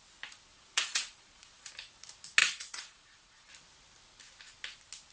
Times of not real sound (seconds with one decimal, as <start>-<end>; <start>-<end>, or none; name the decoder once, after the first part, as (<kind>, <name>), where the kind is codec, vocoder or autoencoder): 0.5-1.7 (vocoder, Vocos); 2.4-3.5